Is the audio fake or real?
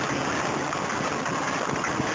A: real